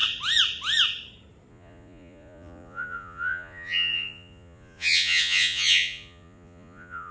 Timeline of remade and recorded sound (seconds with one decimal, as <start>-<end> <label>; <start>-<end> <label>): 0.0-1.5 recorded; 1.5-7.1 remade